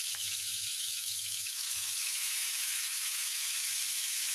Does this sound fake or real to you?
fake